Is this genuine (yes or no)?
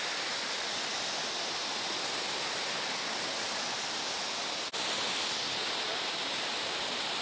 yes